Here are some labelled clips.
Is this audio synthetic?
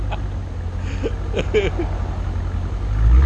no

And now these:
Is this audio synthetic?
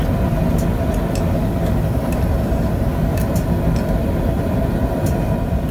no